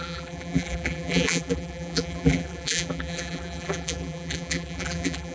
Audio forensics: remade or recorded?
remade